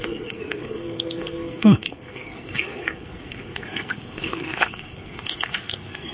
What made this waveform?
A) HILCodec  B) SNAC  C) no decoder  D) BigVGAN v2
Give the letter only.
B